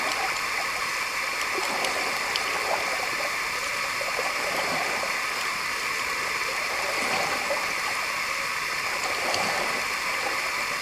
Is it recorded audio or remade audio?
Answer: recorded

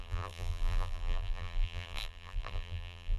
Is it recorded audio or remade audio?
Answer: remade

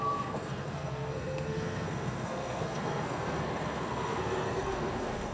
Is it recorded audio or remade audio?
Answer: remade